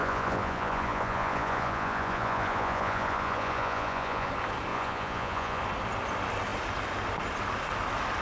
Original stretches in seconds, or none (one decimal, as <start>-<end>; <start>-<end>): 4.3-4.7; 5.6-8.2

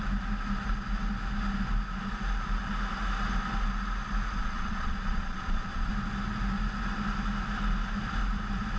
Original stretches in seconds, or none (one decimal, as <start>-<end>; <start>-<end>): 0.0-4.4; 5.9-8.8

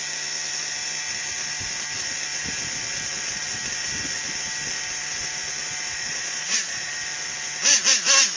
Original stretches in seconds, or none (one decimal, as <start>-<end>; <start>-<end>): 0.0-5.9; 6.9-8.4